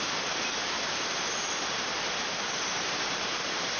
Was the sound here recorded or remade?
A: remade